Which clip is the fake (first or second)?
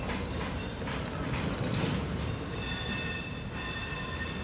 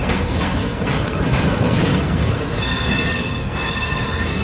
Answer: second